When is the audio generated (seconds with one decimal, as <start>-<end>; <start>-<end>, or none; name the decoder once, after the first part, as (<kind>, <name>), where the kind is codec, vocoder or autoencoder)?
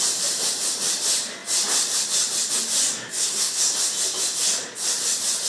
3.1-3.6 (codec, SNAC)